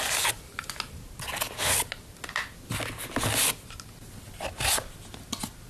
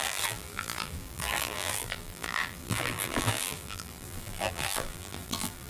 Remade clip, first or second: second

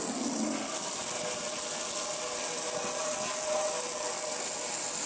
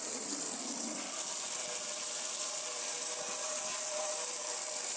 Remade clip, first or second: second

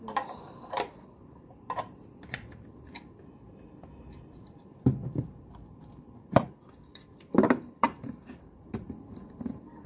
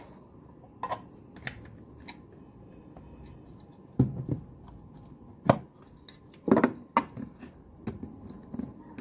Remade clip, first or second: first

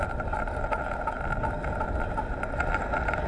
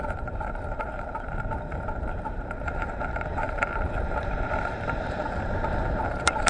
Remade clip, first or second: second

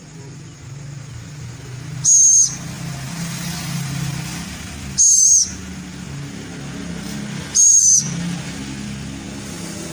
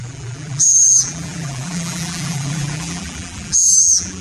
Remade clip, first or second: second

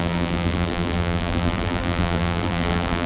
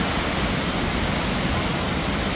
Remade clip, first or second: first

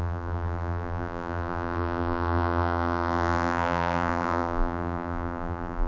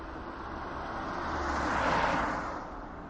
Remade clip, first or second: first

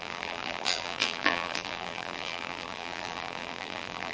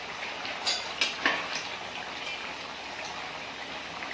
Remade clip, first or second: first